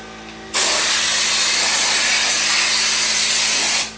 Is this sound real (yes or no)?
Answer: yes